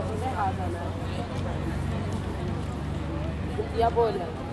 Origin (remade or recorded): recorded